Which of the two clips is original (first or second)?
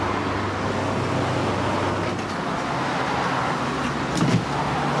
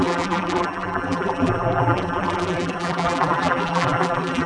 first